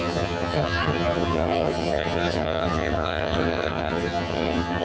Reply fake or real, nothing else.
fake